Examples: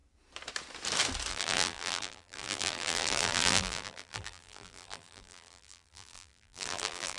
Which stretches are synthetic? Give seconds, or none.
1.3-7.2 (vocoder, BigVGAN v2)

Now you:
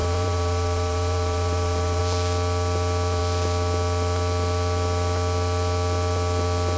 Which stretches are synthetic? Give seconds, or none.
0.0-2.0 (vocoder, BigVGAN v2)

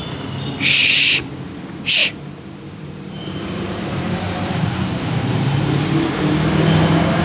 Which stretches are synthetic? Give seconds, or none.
0.8-1.6 (vocoder, BigVGAN v2); 2.0-6.3

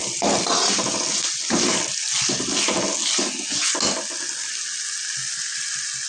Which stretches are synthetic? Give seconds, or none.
0.0-0.8 (vocoder, BigVGAN v2)

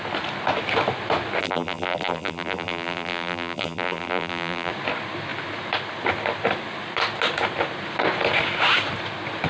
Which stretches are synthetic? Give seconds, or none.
1.4-4.7 (vocoder, BigVGAN v2)

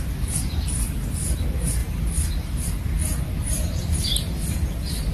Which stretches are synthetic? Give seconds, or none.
none

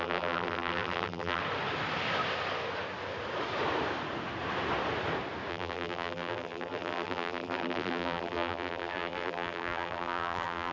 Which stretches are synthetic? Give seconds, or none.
0.0-1.4 (vocoder, BigVGAN v2); 5.5-10.7

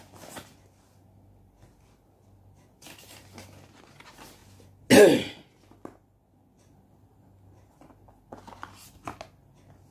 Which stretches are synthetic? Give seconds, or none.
none